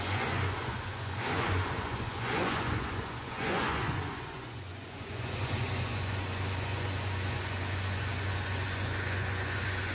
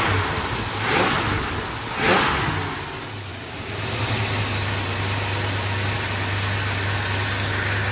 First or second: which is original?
second